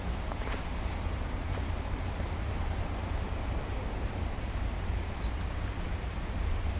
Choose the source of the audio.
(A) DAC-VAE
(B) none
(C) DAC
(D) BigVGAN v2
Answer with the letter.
D